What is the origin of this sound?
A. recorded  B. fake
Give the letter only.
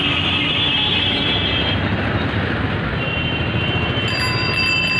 A